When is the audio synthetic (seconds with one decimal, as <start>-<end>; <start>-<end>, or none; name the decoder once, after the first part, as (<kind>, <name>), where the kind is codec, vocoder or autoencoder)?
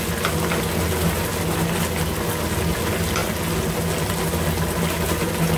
none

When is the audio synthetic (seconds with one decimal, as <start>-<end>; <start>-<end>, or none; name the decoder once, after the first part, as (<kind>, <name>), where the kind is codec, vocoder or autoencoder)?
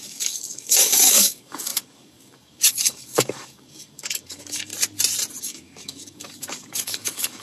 0.0-4.7 (codec, DAC); 5.4-7.4